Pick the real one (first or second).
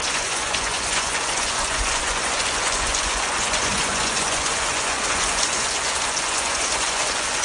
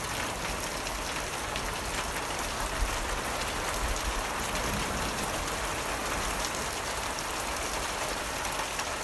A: second